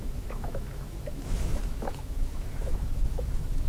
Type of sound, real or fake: fake